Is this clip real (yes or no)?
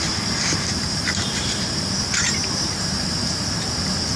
no